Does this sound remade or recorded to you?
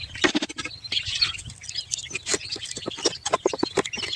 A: recorded